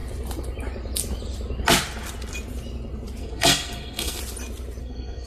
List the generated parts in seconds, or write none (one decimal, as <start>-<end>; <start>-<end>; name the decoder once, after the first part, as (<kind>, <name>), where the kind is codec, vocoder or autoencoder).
3.2-4.2 (codec, SNAC); 4.8-5.3